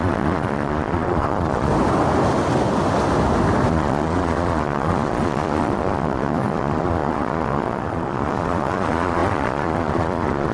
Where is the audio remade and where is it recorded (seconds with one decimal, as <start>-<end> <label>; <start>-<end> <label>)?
0.0-1.7 remade; 1.7-3.7 recorded; 3.7-10.5 remade